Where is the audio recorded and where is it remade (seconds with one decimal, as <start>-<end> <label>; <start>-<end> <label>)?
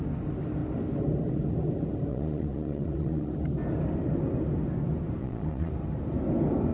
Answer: 0.0-2.1 recorded; 2.1-3.3 remade; 3.3-5.2 recorded; 5.2-5.7 remade; 5.7-6.7 recorded